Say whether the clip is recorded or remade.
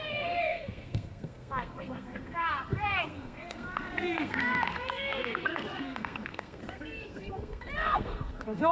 remade